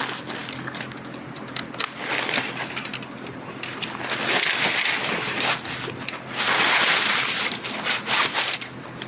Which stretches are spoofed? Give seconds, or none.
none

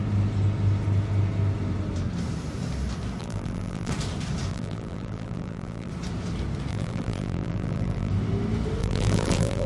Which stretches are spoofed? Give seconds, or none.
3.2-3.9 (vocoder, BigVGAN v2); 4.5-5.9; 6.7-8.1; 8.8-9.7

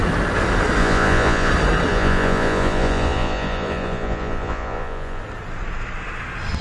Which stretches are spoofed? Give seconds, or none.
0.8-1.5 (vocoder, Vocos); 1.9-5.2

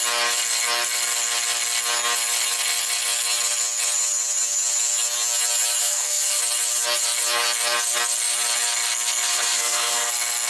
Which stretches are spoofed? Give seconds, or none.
5.8-6.4 (codec, SNAC); 9.3-10.1

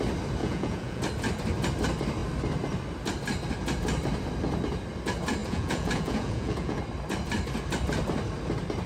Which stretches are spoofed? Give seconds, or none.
0.4-1.0 (vocoder, Vocos); 5.4-6.8

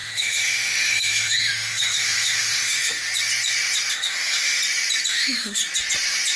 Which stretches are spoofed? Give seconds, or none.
0.0-3.0 (autoencoder, DAC-VAE); 3.9-4.6; 5.1-5.6

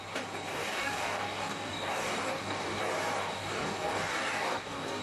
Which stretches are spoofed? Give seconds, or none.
0.5-2.8 (codec, DAC); 3.2-5.0